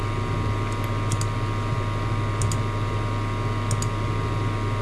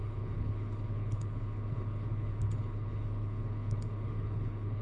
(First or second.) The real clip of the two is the first